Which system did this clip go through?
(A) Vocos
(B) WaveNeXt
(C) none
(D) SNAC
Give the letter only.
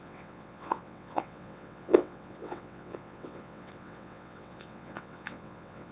B